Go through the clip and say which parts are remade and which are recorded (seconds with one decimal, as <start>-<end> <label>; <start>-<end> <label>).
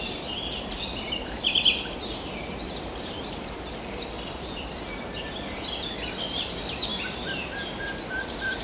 0.0-4.5 remade; 4.5-6.9 recorded; 6.9-7.8 remade; 7.8-8.6 recorded